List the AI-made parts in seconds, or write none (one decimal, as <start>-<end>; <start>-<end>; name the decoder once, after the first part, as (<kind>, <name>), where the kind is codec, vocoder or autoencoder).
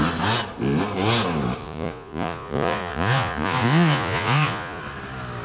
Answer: 1.6-4.8 (vocoder, Vocos)